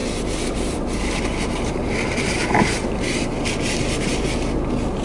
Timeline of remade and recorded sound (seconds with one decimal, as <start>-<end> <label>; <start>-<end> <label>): 0.0-1.7 remade; 1.7-5.0 recorded

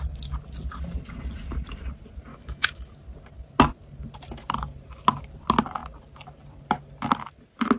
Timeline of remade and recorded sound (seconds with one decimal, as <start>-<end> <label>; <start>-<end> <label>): 0.0-2.3 recorded; 2.3-2.9 remade; 2.9-7.8 recorded

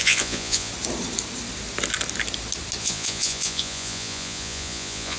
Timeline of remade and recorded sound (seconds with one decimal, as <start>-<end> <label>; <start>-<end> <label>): 0.0-0.7 remade; 0.7-2.8 recorded; 2.8-5.2 remade

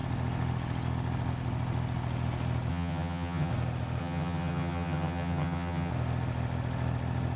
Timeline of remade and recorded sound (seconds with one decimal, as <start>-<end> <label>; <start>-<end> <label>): 0.0-2.7 recorded; 2.7-3.5 remade; 3.5-4.0 recorded; 4.0-5.9 remade; 5.9-7.4 recorded

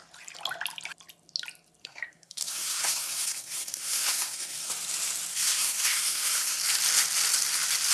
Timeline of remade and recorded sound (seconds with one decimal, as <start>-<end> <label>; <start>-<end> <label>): 0.0-1.8 recorded; 1.8-4.7 remade; 4.7-5.3 recorded; 5.3-6.6 remade; 6.6-7.9 recorded

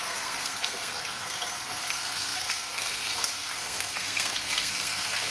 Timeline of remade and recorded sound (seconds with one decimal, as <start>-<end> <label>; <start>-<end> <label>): 0.0-5.3 remade

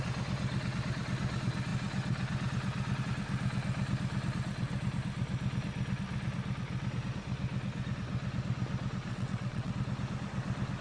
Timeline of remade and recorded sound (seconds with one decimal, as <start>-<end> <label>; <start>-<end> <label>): 0.0-9.1 recorded; 9.1-9.7 remade; 9.7-10.8 recorded